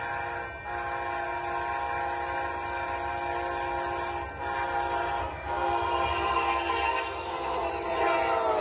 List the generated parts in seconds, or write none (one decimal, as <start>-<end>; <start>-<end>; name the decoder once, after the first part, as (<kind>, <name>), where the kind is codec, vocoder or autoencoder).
5.2-7.7 (codec, SNAC)